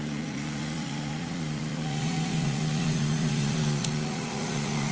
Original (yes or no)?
no